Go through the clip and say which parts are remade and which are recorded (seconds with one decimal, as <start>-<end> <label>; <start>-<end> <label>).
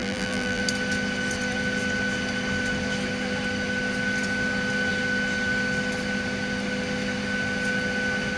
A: 0.0-0.6 remade; 0.6-8.4 recorded